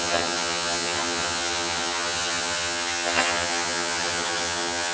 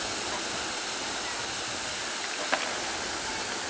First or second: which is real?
second